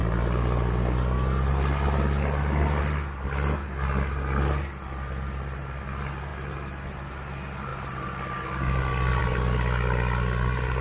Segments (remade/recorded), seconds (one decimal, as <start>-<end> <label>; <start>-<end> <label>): 0.0-10.8 recorded